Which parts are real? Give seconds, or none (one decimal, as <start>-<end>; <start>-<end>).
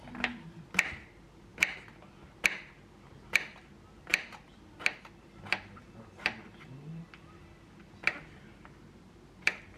0.0-9.8